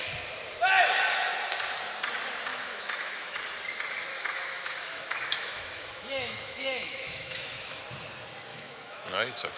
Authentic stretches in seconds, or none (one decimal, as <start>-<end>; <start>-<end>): 0.0-2.5; 3.4-4.1; 7.8-8.5